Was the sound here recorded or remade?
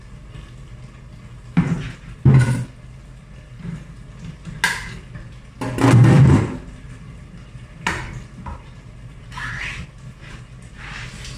recorded